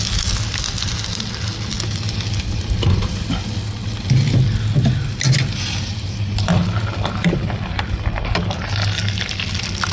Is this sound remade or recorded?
recorded